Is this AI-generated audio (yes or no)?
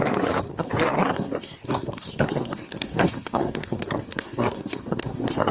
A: yes